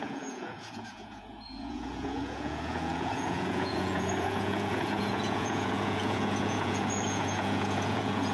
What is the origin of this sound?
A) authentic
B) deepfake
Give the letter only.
B